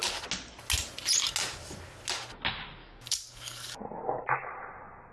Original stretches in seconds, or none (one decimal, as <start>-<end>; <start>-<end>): 0.0-2.8; 3.8-5.1